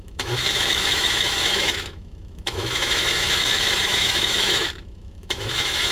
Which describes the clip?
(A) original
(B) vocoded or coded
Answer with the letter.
B